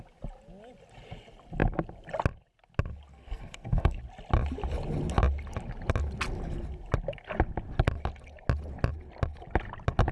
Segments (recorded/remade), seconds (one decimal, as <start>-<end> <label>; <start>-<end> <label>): 0.0-3.1 recorded; 3.1-4.0 remade; 4.0-10.1 recorded